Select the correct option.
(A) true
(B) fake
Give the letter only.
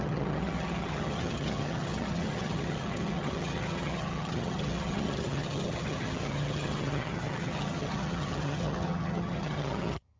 B